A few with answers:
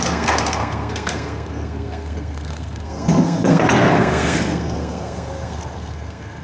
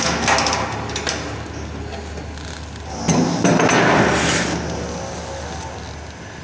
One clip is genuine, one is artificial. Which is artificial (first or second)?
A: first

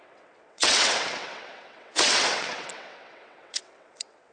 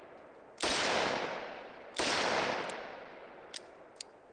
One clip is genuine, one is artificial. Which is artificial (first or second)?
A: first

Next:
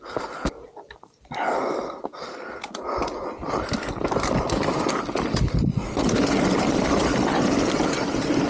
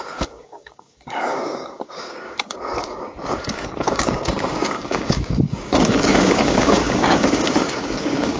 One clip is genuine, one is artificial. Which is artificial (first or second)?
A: second